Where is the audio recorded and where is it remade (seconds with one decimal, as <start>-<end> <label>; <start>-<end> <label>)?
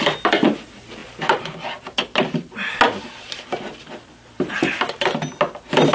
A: 0.0-5.9 recorded